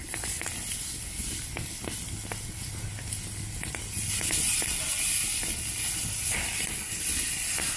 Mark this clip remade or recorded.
recorded